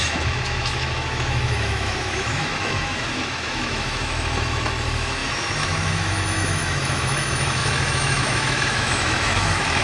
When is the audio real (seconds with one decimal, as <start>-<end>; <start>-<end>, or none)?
none